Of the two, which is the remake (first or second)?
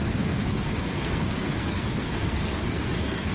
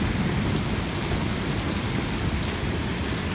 first